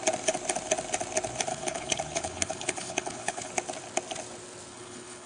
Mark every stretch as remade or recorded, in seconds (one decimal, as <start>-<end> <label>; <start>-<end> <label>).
0.0-1.5 recorded; 1.5-3.5 remade; 3.5-4.7 recorded; 4.7-5.3 remade